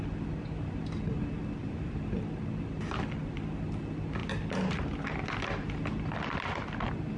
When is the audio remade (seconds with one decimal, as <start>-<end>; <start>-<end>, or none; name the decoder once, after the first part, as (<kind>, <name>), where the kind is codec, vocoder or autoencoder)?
1.6-2.2 (vocoder, BigVGAN v2)